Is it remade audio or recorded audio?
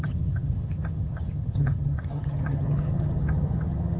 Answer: remade